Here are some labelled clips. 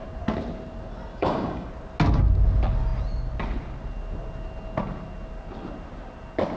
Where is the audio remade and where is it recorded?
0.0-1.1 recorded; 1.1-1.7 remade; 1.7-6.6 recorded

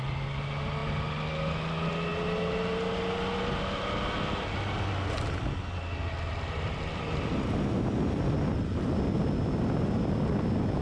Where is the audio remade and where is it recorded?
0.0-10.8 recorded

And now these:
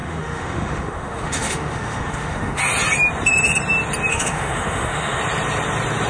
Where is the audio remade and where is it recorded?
0.0-2.6 remade; 2.6-4.1 recorded; 4.1-5.2 remade; 5.2-6.1 recorded

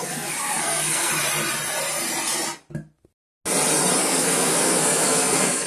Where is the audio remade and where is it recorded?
0.0-1.1 remade; 1.1-4.0 recorded; 4.0-5.7 remade

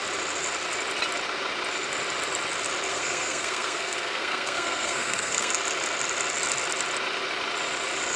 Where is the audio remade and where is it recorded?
0.0-2.9 recorded; 2.9-5.5 remade; 5.5-8.2 recorded

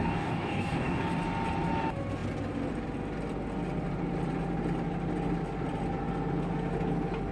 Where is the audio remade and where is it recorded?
0.0-1.0 remade; 1.0-7.3 recorded

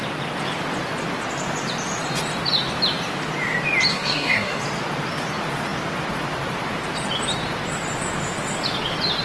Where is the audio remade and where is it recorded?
0.0-3.9 recorded; 3.9-4.6 remade; 4.6-9.2 recorded

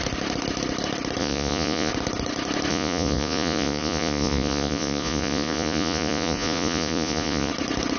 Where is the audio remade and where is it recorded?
0.0-1.2 recorded; 1.2-1.9 remade; 1.9-2.7 recorded; 2.7-7.5 remade; 7.5-8.0 recorded